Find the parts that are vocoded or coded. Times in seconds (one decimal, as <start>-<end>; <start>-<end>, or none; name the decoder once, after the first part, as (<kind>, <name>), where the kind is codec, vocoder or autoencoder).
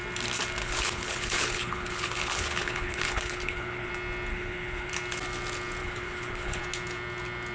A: 0.6-3.9 (codec, HILCodec); 4.3-4.9; 5.8-6.6